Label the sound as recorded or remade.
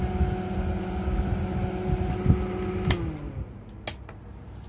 recorded